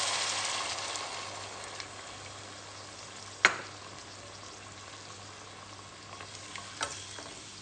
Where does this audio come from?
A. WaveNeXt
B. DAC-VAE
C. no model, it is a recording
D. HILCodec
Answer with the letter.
C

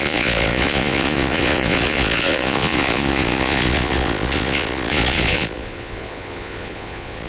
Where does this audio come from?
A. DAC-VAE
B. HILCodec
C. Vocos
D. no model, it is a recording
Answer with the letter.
C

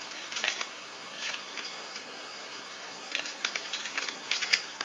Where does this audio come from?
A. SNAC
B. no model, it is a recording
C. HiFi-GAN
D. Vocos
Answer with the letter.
A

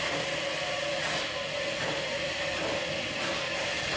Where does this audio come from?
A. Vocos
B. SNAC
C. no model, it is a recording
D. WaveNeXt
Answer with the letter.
C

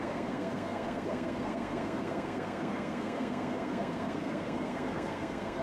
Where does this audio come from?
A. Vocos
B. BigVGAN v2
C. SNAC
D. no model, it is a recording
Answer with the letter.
C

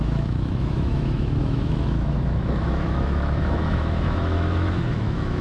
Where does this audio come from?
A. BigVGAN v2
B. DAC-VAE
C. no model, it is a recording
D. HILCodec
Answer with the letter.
B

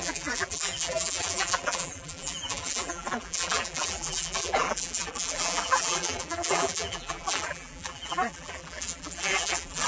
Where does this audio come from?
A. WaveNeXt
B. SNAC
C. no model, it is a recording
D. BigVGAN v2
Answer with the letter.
D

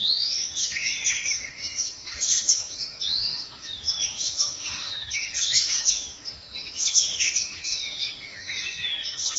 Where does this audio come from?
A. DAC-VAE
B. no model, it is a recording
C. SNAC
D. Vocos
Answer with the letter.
A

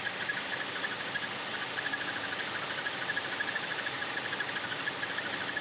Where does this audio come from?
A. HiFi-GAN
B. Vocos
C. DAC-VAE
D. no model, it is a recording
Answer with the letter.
D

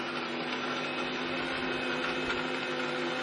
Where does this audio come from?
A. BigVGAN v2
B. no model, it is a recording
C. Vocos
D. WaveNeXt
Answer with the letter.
B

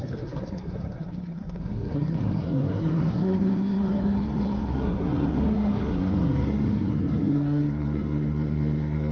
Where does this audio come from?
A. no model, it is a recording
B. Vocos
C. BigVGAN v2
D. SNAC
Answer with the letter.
D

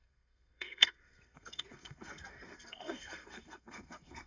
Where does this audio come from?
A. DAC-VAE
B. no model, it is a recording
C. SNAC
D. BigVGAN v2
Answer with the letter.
C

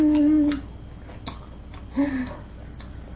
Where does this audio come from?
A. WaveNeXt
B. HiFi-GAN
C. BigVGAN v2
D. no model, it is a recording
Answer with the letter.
D